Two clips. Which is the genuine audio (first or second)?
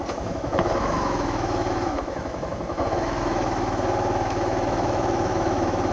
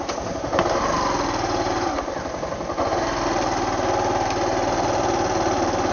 second